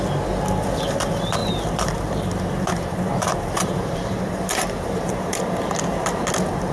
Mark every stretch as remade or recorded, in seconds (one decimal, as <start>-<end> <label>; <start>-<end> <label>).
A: 0.0-1.4 recorded; 1.4-5.4 remade; 5.4-6.7 recorded